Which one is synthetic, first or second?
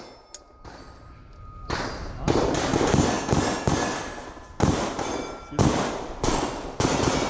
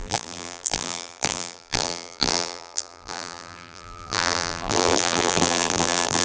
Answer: second